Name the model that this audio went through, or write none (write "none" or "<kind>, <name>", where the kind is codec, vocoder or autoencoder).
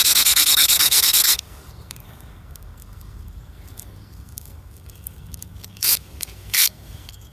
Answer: codec, SNAC